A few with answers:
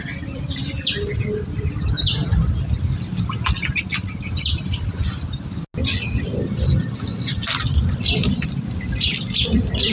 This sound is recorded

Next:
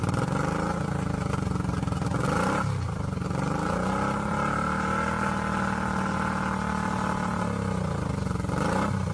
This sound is recorded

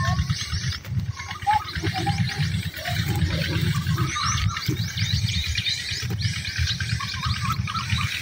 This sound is recorded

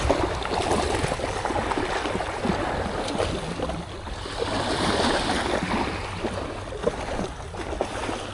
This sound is recorded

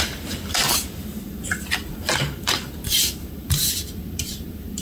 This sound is remade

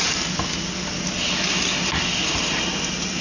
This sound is recorded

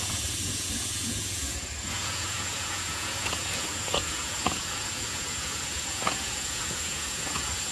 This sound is remade